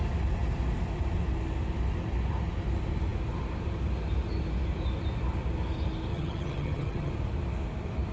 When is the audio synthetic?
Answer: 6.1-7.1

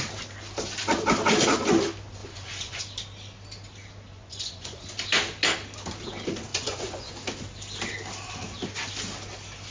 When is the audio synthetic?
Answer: 2.2-2.8; 4.1-4.8; 6.5-7.1

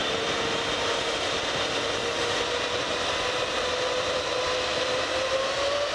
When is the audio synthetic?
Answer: 0.0-4.7; 5.4-5.9